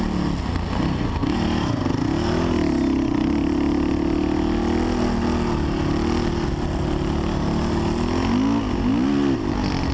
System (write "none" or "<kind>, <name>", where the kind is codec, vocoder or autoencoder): none